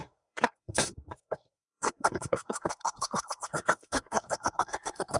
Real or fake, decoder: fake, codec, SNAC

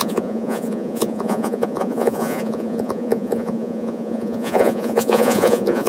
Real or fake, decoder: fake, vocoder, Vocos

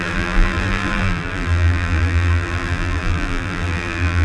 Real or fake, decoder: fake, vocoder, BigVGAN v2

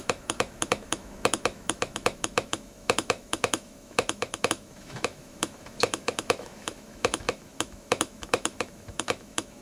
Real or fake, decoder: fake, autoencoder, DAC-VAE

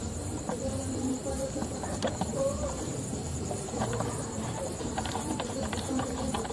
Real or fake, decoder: fake, vocoder, BigVGAN v2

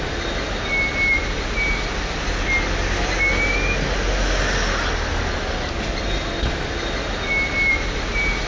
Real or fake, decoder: real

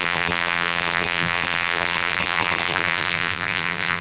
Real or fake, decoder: fake, vocoder, BigVGAN v2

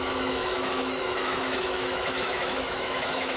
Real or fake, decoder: fake, autoencoder, DAC-VAE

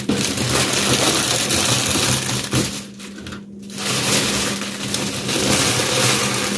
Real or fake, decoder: real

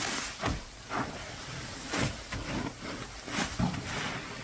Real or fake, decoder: real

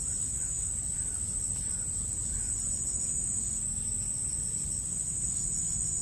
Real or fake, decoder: real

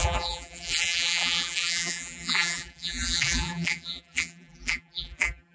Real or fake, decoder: fake, vocoder, BigVGAN v2